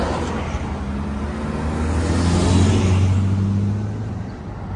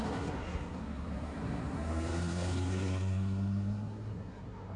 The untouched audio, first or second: first